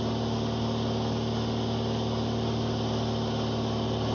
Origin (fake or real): real